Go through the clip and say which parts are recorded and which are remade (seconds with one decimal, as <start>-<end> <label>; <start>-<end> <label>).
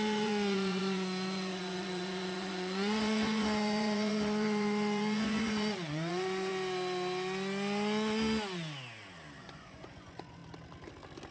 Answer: 0.0-6.5 remade; 6.5-9.4 recorded; 9.4-10.4 remade; 10.4-11.3 recorded